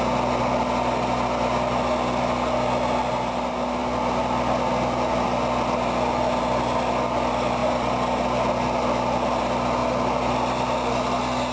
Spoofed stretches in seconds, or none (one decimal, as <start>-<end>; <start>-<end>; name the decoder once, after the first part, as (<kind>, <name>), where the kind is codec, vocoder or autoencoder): none